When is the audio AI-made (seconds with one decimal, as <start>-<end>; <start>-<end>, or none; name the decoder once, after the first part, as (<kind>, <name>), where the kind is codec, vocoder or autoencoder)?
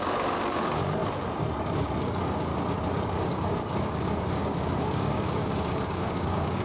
0.0-0.8 (codec, DAC); 2.0-2.5; 3.1-6.6